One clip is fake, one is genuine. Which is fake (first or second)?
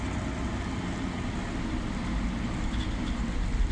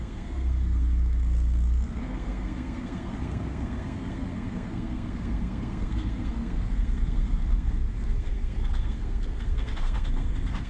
second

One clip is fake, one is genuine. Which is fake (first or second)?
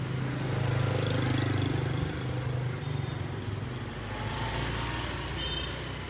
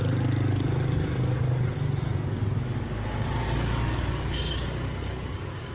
second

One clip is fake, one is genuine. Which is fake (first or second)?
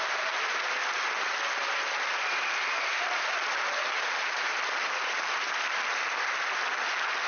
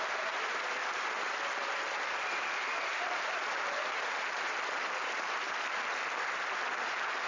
second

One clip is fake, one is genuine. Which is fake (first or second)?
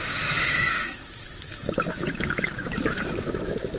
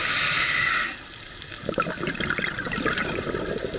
first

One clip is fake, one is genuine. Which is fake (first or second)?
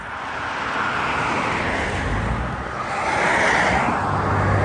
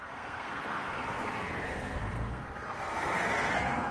second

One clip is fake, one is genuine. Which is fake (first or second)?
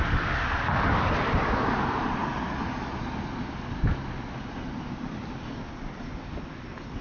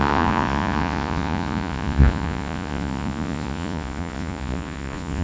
second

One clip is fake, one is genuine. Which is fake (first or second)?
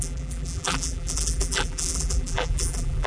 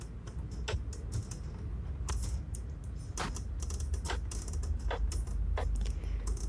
first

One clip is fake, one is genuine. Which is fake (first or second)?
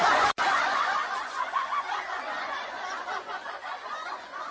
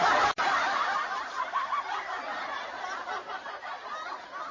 first